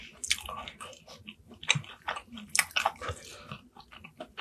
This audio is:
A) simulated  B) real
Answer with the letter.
B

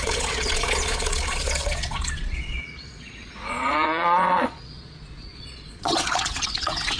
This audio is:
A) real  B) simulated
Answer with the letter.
B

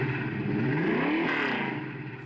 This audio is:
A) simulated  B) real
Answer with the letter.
B